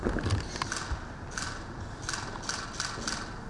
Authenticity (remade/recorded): recorded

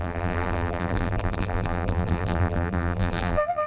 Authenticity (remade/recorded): remade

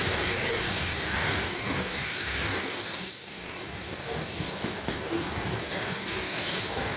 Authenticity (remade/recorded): remade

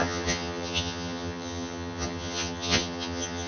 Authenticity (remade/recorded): remade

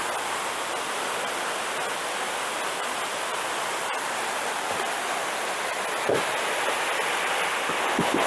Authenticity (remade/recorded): recorded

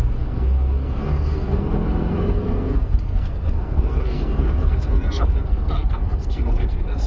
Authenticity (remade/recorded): remade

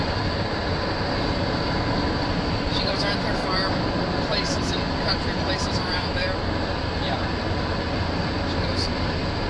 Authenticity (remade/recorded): recorded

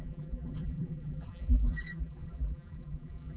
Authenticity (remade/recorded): remade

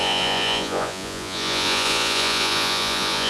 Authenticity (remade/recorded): remade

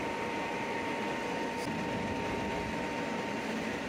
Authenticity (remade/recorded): recorded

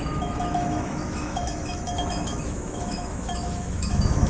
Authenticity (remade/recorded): remade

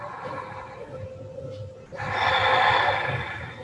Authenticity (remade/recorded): recorded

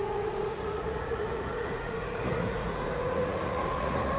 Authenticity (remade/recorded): remade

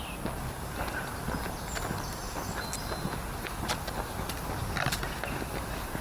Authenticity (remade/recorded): recorded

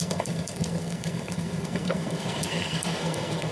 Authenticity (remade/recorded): remade